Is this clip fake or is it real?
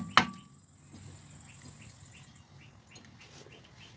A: real